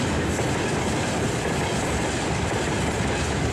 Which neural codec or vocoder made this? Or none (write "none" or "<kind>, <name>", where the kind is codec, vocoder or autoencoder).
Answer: none